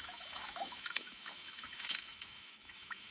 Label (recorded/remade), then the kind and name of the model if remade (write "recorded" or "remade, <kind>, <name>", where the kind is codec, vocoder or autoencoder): remade, autoencoder, DAC-VAE